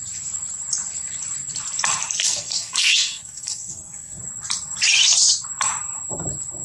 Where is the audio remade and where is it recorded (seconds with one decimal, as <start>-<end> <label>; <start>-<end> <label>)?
0.0-2.2 recorded; 2.2-4.2 remade; 4.2-6.6 recorded